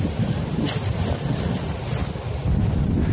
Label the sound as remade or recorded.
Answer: remade